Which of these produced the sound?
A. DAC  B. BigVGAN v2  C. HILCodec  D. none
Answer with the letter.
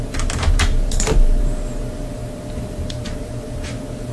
B